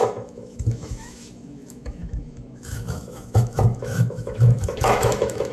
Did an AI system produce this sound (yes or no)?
yes